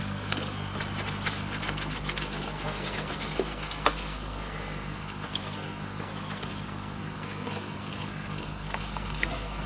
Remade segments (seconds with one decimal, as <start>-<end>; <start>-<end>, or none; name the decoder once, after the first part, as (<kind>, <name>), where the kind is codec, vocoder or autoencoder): 0.0-0.7 (codec, SNAC); 1.3-9.7